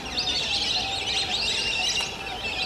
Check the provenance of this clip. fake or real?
real